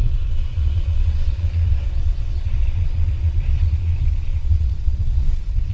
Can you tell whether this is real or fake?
fake